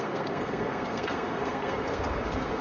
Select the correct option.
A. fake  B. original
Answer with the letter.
A